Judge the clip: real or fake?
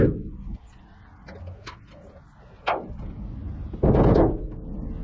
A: real